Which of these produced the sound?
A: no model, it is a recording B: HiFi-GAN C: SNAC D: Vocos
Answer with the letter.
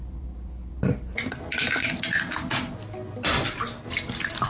A